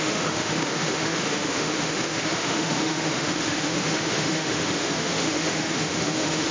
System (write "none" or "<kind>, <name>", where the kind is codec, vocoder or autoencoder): autoencoder, DAC-VAE